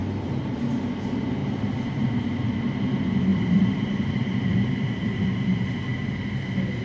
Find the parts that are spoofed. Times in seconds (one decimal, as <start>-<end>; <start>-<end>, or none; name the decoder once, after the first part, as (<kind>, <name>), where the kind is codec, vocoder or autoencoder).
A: 0.0-0.8 (vocoder, BigVGAN v2); 1.4-2.5; 3.3-5.3